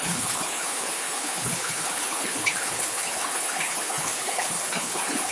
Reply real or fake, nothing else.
fake